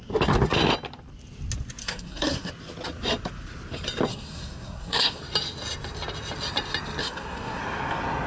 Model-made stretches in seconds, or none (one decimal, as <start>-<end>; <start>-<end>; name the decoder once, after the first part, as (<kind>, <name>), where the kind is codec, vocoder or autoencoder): 1.8-2.5 (codec, SNAC); 4.1-5.2; 7.0-7.6